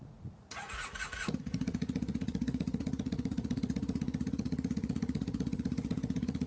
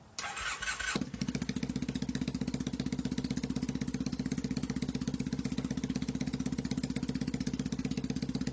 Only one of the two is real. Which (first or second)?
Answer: second